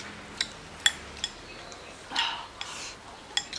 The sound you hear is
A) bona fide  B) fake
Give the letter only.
A